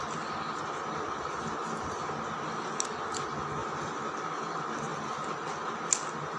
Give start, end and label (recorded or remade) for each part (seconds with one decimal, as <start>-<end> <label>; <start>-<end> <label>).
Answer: 0.0-3.6 recorded; 3.6-4.2 remade; 4.2-6.4 recorded